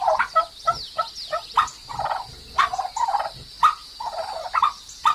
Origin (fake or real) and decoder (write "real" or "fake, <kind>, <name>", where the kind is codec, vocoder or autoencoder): real